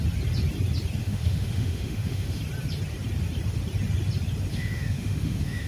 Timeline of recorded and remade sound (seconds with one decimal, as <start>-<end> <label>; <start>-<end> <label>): 0.0-1.0 recorded; 1.0-2.4 remade; 2.4-4.5 recorded; 4.5-5.7 remade